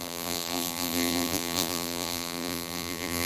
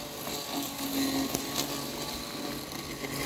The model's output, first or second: first